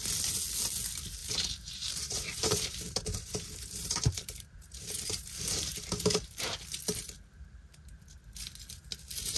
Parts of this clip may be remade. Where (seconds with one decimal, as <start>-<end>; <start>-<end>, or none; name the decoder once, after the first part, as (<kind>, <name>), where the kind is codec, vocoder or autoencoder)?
1.2-6.4 (vocoder, BigVGAN v2)